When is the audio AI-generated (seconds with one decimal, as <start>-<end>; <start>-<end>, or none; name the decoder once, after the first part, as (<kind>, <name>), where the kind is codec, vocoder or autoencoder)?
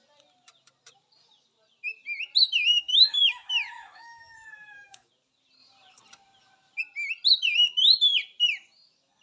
2.7-5.1 (autoencoder, DAC-VAE)